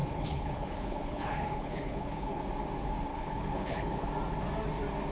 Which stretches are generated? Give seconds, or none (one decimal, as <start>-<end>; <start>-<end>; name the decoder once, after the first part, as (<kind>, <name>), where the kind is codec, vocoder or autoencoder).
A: 0.0-2.4 (codec, HILCodec); 3.1-4.1